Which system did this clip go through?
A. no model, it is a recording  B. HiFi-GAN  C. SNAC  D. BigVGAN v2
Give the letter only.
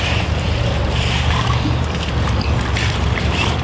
D